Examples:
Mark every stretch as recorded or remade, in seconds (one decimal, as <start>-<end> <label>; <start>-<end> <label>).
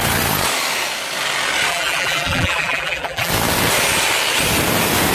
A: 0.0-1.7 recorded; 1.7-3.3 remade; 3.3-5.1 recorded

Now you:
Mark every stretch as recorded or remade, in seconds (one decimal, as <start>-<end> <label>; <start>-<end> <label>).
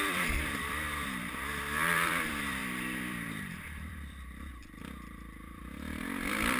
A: 0.0-6.6 remade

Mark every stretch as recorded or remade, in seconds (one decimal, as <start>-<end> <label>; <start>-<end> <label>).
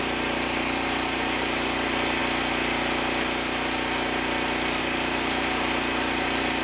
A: 0.0-2.2 remade; 2.2-4.8 recorded; 4.8-6.6 remade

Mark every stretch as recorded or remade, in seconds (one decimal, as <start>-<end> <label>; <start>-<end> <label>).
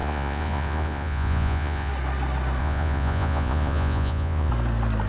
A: 0.0-1.9 remade; 1.9-2.6 recorded; 2.6-4.5 remade; 4.5-5.1 recorded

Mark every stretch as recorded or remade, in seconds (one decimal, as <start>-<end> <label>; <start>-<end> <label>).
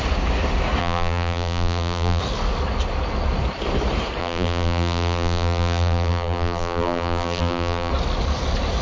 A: 0.0-0.8 recorded; 0.8-2.2 remade; 2.2-4.2 recorded; 4.2-7.9 remade; 7.9-8.8 recorded